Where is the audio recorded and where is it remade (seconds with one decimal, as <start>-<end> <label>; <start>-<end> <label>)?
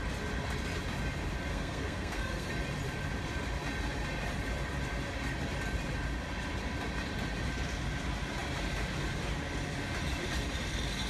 0.0-1.5 recorded; 1.5-2.5 remade; 2.5-11.1 recorded